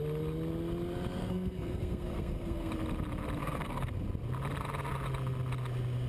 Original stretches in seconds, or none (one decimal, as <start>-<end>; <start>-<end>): 0.0-1.2; 2.7-3.4; 3.9-6.1